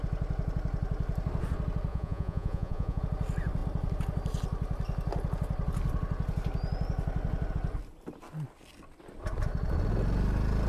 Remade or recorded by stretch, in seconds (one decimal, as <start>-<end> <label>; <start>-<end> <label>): 0.0-1.9 recorded; 1.9-3.0 remade; 3.0-10.7 recorded